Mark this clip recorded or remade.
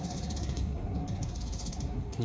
remade